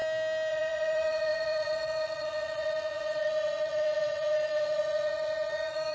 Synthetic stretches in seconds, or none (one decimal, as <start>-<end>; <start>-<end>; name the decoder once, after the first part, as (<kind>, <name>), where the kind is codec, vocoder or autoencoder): 0.5-5.9 (vocoder, Vocos)